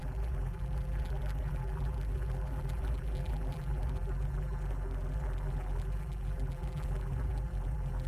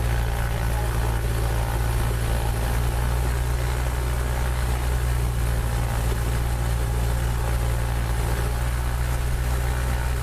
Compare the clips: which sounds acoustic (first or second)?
second